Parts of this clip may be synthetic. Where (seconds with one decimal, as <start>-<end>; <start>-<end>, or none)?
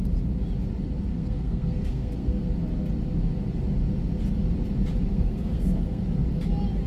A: 1.1-2.5; 5.1-6.0